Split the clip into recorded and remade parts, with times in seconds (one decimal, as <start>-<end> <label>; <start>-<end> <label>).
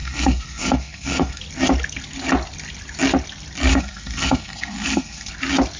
0.0-1.4 remade; 1.4-3.7 recorded; 3.7-5.3 remade; 5.3-5.8 recorded